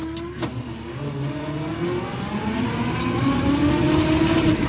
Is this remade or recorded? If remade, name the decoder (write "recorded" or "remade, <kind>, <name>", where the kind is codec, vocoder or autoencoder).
recorded